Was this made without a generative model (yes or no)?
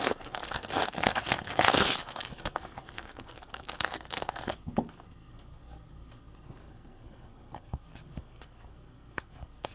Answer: no